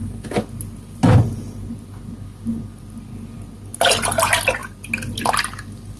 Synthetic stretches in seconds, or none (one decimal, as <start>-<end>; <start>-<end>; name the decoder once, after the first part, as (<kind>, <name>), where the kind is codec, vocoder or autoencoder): none